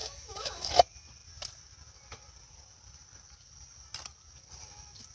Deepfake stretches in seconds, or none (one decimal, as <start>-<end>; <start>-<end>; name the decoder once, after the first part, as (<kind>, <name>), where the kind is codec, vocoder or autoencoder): 0.0-0.7 (autoencoder, DAC-VAE)